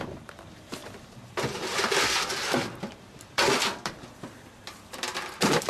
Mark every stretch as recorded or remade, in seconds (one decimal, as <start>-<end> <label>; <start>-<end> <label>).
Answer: 0.0-5.7 recorded